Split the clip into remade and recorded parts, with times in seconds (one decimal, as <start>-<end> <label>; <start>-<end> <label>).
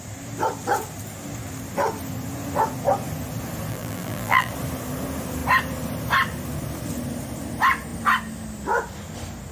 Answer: 0.0-3.7 recorded; 3.7-4.5 remade; 4.5-9.5 recorded